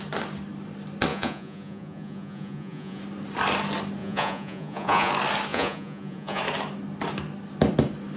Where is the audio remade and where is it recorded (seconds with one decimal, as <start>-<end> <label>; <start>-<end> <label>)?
0.0-1.1 recorded; 1.1-3.0 remade; 3.0-4.0 recorded; 4.0-5.1 remade; 5.1-5.5 recorded; 5.5-6.4 remade; 6.4-8.2 recorded